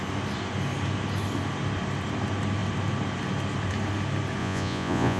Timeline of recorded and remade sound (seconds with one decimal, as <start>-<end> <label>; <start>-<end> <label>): 0.0-4.4 recorded; 4.4-5.2 remade